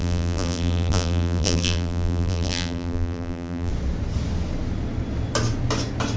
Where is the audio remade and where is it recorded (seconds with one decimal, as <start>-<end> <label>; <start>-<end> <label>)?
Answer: 0.0-3.7 remade; 3.7-6.2 recorded